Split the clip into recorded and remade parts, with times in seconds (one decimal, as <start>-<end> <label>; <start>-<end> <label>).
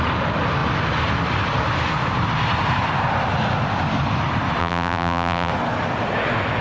0.0-4.6 recorded; 4.6-5.5 remade; 5.5-6.6 recorded